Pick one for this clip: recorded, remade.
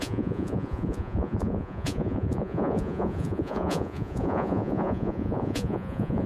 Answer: remade